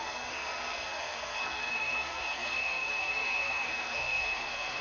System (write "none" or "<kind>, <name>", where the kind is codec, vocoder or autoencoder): codec, SNAC